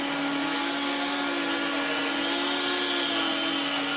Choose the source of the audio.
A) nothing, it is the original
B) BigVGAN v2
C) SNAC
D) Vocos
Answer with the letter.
A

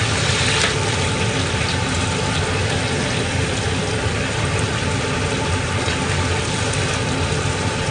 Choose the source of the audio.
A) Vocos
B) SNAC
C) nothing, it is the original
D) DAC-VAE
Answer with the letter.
C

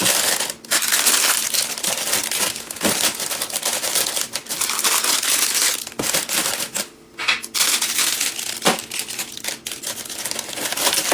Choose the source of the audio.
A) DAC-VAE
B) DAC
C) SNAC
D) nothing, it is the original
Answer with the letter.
D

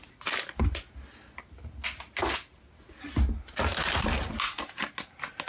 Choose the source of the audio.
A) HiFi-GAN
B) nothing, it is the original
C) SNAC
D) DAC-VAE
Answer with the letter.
B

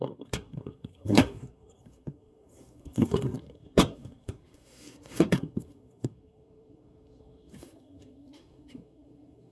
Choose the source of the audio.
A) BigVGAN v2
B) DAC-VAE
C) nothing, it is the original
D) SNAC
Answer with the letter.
D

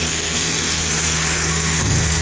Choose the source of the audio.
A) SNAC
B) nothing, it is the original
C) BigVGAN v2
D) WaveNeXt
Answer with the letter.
A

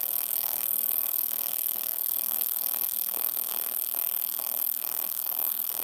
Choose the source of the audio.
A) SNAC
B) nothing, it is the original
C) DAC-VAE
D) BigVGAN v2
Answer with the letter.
A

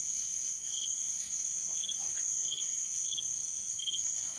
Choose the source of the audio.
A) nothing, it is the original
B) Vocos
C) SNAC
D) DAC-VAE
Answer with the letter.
C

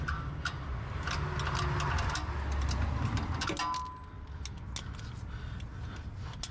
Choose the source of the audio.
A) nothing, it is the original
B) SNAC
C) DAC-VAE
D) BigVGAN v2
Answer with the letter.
A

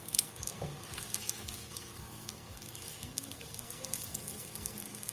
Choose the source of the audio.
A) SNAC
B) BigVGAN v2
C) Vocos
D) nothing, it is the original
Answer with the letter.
A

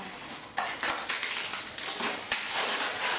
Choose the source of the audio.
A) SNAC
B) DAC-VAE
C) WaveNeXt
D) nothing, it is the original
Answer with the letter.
D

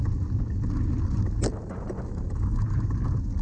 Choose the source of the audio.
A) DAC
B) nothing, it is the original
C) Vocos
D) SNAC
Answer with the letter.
B